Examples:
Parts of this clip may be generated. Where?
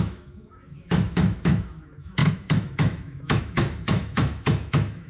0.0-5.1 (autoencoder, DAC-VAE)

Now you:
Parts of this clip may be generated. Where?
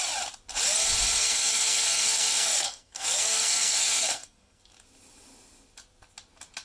1.2-4.6 (codec, SNAC)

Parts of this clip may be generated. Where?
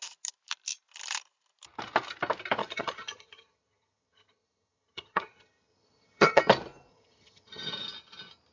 2.6-6.4 (vocoder, HiFi-GAN); 6.9-7.7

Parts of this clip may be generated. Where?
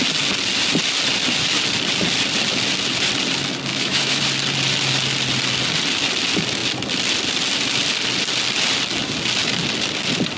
3.7-4.2 (autoencoder, DAC-VAE)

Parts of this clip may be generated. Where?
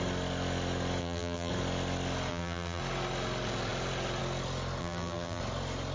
1.0-1.5 (vocoder, BigVGAN v2); 2.3-2.8; 4.8-5.4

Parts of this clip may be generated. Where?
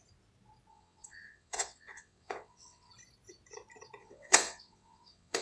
0.7-2.9 (vocoder, WaveNeXt); 4.0-5.4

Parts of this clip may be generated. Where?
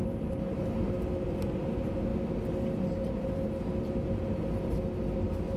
none